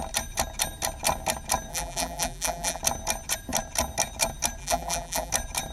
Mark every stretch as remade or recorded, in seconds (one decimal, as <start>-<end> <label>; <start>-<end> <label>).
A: 0.0-1.7 recorded; 1.7-2.8 remade; 2.8-4.6 recorded; 4.6-5.3 remade; 5.3-5.7 recorded